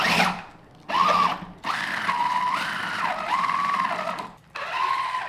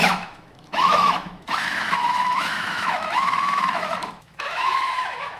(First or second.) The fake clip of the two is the second